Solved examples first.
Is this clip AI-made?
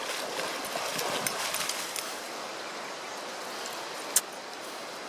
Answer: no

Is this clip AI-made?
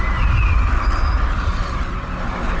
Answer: no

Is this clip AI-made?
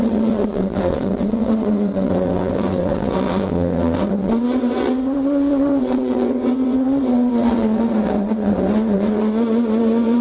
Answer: yes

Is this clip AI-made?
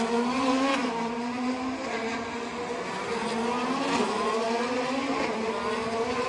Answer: no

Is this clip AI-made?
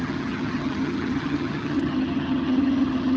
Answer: yes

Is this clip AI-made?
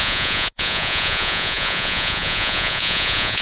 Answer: yes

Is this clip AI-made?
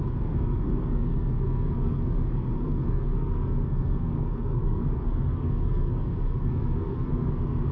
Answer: yes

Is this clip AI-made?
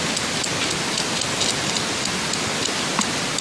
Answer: no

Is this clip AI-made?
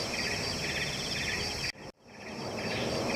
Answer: no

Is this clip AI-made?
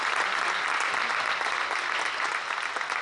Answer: no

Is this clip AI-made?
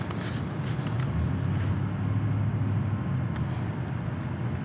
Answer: no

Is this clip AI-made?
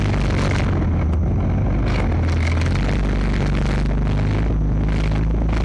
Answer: no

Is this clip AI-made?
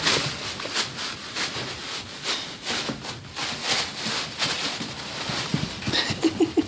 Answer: no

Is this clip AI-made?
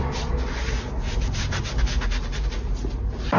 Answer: no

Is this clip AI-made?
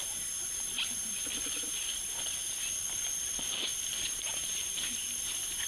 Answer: no